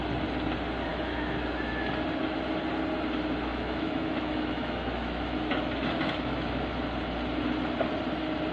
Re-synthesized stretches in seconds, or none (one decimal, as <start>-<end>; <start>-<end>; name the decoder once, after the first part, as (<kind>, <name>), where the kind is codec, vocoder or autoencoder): 0.9-1.9 (autoencoder, DAC-VAE); 3.5-6.6